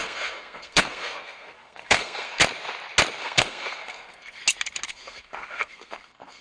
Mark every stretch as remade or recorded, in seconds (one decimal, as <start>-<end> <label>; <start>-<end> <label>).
0.0-2.4 remade; 2.4-3.2 recorded; 3.2-4.4 remade; 4.4-4.9 recorded; 4.9-6.4 remade